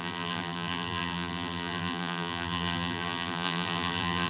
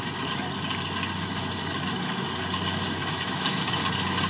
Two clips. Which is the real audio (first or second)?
second